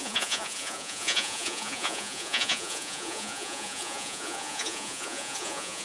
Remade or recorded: remade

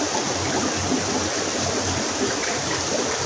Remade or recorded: recorded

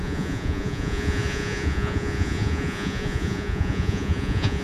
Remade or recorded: remade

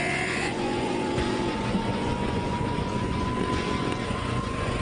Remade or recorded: remade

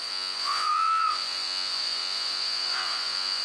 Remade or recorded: remade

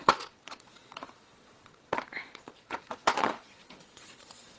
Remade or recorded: remade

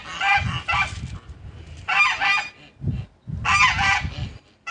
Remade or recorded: recorded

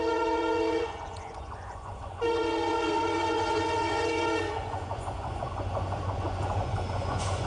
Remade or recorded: remade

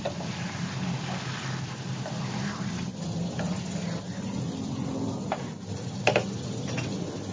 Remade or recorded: recorded